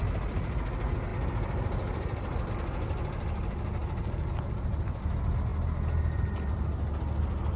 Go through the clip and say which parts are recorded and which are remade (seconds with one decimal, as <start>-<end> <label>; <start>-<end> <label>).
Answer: 0.0-7.6 recorded